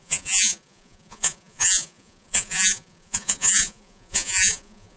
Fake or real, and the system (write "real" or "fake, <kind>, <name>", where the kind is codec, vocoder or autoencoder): fake, vocoder, Vocos